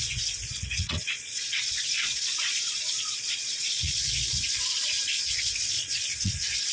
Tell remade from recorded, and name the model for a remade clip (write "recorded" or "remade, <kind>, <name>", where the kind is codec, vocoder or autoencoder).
remade, vocoder, Vocos